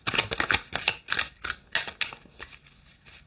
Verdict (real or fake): real